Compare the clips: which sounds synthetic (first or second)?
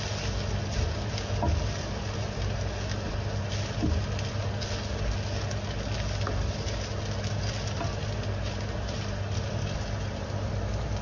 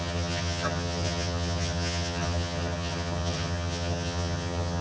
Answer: second